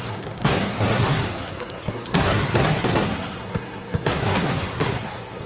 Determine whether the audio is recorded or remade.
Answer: remade